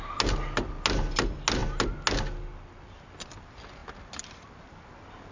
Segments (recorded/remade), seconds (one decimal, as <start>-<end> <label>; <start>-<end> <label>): 0.0-5.3 recorded